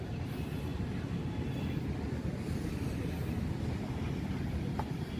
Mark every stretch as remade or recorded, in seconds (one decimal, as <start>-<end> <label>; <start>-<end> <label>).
0.0-5.2 recorded